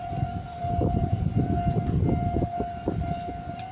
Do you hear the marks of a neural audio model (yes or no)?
yes